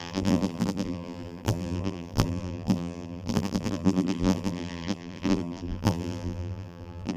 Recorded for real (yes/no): no